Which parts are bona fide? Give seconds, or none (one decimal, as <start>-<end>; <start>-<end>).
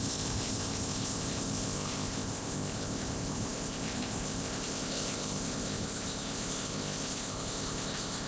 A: none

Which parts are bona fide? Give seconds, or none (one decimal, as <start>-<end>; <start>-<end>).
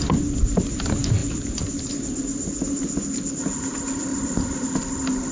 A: 0.0-5.3